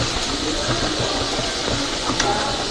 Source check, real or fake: fake